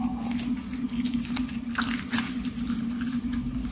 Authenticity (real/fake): real